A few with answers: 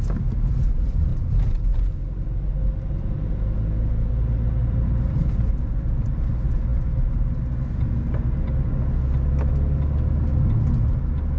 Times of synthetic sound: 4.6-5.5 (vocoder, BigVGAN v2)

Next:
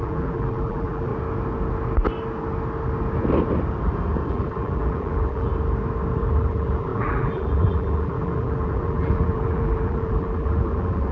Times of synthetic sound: 0.0-1.1 (vocoder, BigVGAN v2); 4.3-5.5; 6.2-11.1